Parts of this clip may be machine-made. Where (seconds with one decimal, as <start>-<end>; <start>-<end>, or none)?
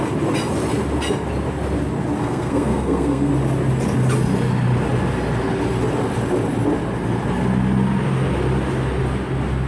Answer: 2.2-3.3